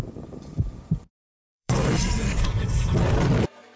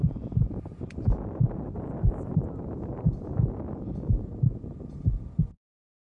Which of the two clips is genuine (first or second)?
second